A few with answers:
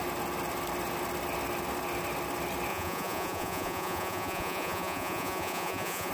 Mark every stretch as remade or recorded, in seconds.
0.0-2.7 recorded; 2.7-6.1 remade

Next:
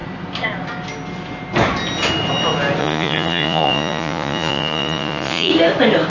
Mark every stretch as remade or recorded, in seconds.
0.0-2.8 recorded; 2.8-5.5 remade; 5.5-6.1 recorded

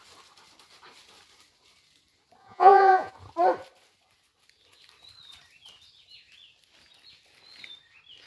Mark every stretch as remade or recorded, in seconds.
0.0-2.4 recorded; 2.4-3.1 remade; 3.1-8.3 recorded